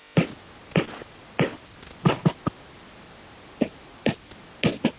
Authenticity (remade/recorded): recorded